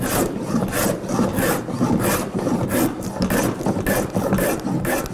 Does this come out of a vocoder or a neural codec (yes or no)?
no